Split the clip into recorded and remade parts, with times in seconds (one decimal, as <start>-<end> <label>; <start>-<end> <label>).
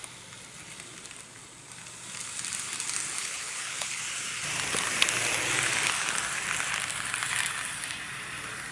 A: 0.0-3.2 recorded; 3.2-4.0 remade; 4.0-8.7 recorded